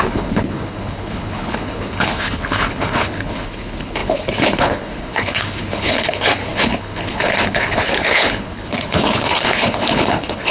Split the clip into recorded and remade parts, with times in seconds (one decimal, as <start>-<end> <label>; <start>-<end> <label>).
0.0-10.5 remade